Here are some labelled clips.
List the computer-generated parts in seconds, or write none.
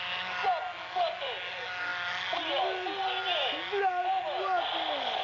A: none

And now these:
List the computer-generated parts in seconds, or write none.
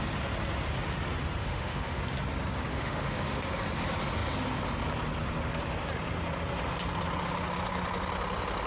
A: 1.4-2.0; 2.7-3.4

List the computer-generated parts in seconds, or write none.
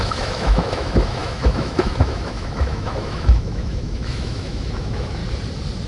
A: 0.0-5.2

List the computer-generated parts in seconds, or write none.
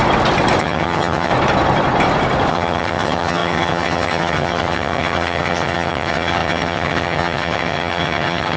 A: 0.6-1.3; 2.5-8.6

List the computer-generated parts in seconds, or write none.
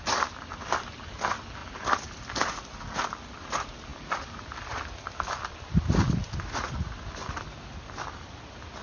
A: none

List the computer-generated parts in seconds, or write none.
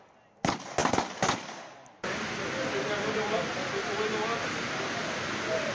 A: none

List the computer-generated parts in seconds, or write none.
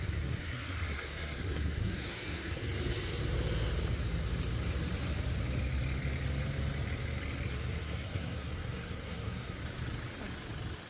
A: 0.0-2.6; 7.5-9.6